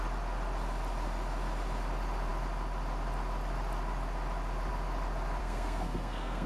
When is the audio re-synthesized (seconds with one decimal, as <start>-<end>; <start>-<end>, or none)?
5.4-6.5